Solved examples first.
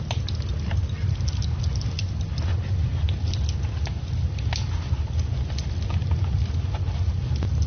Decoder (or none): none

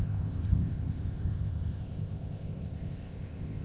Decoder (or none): codec, ZipCodec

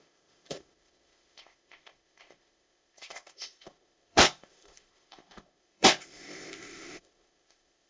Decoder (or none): codec, ZipCodec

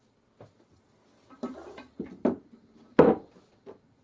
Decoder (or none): none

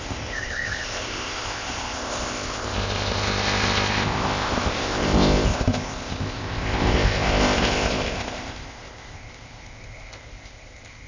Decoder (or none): codec, ZipCodec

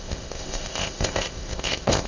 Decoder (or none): codec, ZipCodec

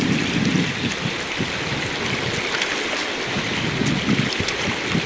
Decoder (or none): none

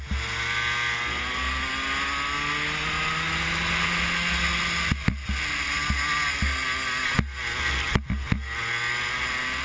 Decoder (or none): none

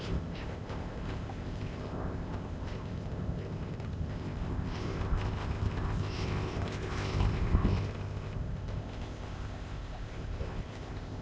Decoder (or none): codec, ZipCodec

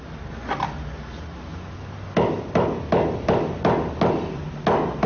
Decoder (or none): none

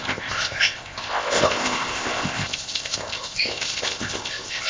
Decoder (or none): codec, ZipCodec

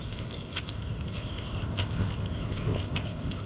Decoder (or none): codec, ZipCodec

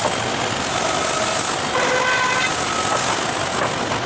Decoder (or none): none